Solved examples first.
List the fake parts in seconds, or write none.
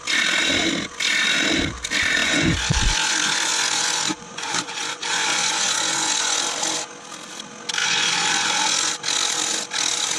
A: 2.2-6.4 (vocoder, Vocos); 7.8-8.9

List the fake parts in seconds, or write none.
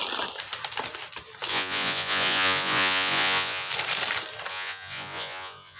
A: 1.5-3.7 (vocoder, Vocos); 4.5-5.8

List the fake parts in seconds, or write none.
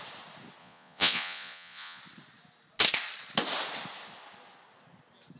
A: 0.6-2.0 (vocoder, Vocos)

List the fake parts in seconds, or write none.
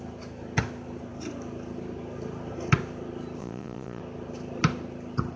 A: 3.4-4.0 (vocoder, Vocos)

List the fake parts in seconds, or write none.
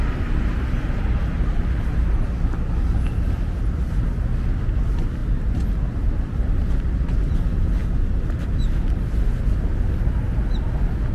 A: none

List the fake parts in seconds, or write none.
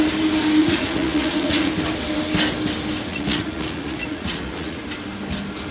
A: 0.6-1.7 (vocoder, Vocos); 3.1-4.8